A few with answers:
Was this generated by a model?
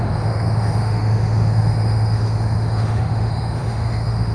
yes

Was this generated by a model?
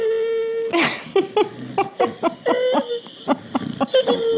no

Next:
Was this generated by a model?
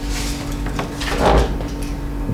no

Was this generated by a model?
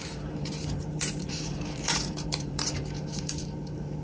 yes